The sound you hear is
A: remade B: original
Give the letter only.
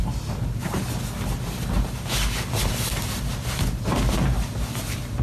B